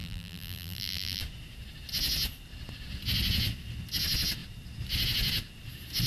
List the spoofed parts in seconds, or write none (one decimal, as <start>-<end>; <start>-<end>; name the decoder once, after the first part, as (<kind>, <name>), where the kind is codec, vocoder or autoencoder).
0.0-1.2 (vocoder, BigVGAN v2)